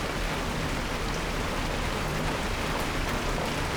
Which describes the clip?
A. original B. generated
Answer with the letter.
A